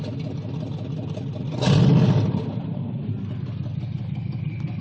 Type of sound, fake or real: real